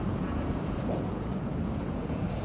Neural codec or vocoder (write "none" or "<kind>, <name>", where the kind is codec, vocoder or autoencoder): vocoder, Vocos